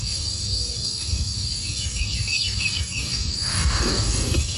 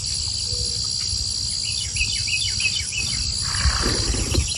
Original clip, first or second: second